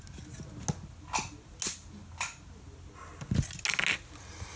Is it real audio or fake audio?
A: real